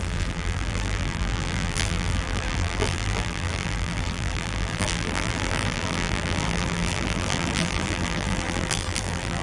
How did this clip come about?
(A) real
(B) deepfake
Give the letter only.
B